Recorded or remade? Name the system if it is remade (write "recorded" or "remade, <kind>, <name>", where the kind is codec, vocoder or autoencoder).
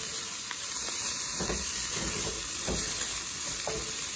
recorded